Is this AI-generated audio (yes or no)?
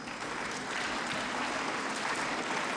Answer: no